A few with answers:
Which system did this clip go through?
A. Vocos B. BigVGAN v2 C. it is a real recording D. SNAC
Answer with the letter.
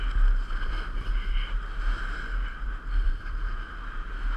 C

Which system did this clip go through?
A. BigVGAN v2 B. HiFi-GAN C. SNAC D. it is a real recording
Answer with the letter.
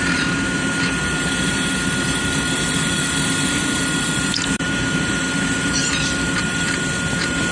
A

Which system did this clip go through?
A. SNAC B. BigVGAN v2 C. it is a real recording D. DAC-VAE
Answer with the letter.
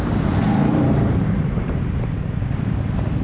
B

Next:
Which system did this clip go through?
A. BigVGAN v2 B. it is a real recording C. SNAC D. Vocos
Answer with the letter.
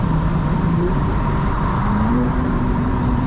A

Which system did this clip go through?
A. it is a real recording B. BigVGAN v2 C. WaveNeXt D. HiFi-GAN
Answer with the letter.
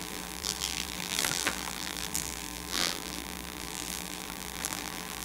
B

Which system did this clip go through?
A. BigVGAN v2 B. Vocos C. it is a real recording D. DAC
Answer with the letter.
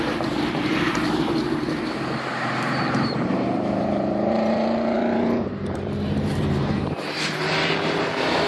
A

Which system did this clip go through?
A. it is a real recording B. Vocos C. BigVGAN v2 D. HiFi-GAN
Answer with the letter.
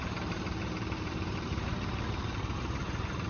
C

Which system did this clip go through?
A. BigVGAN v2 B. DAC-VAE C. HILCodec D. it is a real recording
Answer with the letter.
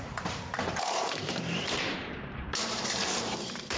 A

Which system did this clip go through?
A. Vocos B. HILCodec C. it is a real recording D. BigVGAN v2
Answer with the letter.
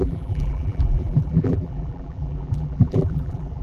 D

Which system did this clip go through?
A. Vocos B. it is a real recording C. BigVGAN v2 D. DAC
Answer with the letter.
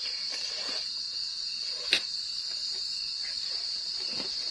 B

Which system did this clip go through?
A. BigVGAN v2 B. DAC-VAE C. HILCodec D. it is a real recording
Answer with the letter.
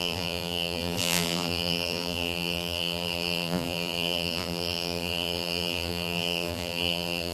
A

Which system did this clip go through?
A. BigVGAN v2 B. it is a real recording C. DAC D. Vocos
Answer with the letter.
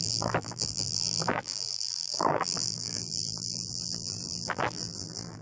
A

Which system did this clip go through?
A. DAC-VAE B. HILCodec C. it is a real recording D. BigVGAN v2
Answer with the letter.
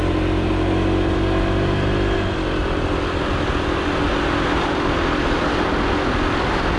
C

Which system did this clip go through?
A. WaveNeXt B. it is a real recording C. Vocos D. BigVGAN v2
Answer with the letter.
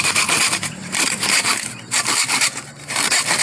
D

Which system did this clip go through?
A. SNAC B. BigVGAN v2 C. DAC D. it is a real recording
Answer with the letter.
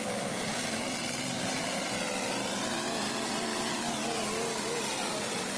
B